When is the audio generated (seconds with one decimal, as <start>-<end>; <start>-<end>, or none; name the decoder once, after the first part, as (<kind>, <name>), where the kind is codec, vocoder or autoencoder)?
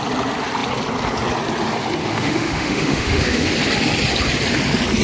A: 2.0-3.5 (autoencoder, DAC-VAE)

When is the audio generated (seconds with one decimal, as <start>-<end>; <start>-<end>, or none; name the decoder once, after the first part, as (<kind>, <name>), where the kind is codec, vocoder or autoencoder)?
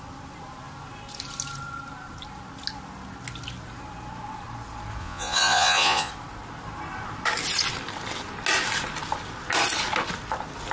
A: 5.0-6.1 (vocoder, Vocos)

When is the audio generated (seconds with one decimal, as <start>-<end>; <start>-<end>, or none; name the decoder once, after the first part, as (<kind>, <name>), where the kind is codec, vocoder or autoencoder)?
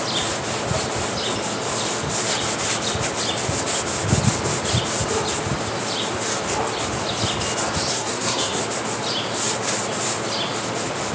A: 7.9-8.6 (codec, SNAC)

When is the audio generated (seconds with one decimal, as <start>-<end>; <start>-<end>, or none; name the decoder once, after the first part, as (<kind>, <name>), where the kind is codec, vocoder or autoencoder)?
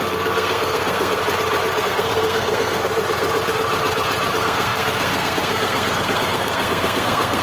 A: 0.0-1.2 (codec, SNAC); 1.8-2.9; 4.3-7.4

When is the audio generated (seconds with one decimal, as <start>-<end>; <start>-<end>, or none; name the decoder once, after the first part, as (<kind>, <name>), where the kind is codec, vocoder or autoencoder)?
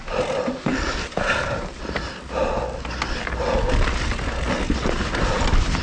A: none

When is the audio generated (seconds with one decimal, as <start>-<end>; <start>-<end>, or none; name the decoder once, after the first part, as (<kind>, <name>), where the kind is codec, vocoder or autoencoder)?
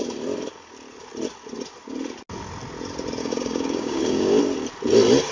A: 3.2-4.4 (codec, DAC)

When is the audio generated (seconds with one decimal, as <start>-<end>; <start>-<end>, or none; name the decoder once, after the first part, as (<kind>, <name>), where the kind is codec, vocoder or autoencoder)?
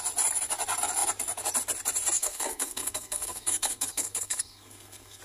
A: 2.2-5.2 (codec, SNAC)